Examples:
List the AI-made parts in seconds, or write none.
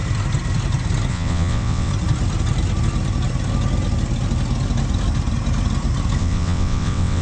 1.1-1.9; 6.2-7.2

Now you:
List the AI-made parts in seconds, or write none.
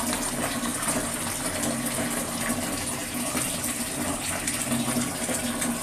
3.0-4.2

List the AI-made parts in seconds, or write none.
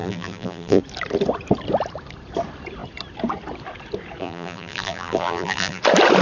0.0-0.8; 4.2-5.8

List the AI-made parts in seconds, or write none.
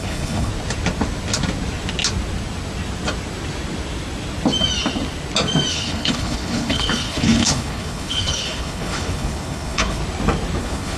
0.0-0.5; 5.7-10.0; 10.6-11.0